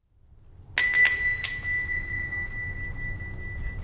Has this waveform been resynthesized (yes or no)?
no